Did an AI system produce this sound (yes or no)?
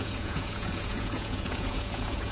yes